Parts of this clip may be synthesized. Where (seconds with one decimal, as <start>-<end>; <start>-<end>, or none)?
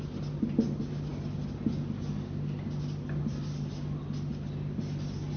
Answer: none